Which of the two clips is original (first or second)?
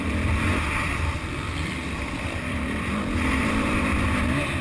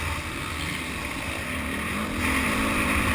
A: second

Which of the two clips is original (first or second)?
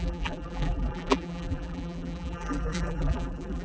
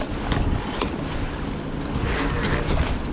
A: second